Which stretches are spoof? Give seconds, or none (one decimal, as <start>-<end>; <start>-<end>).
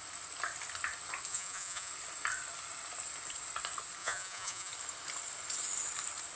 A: 1.3-1.9; 4.0-4.7